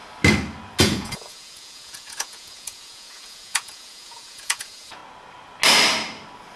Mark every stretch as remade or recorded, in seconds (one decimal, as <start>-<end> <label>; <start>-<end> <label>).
0.0-0.8 recorded; 0.8-5.0 remade; 5.0-6.6 recorded